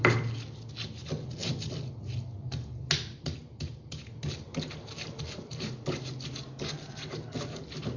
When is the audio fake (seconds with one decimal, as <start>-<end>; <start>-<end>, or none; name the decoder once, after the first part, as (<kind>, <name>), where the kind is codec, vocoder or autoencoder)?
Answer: none